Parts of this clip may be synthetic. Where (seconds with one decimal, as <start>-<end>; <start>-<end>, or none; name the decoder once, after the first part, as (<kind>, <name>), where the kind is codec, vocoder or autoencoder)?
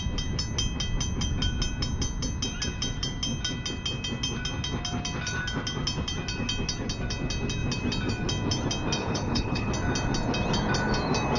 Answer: 9.0-9.7 (codec, HILCodec)